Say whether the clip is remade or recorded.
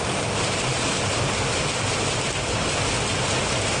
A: recorded